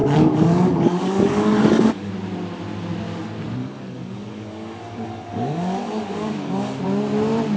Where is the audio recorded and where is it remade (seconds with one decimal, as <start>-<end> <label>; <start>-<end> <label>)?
0.0-2.1 remade; 2.1-3.6 recorded; 3.6-6.8 remade; 6.8-7.6 recorded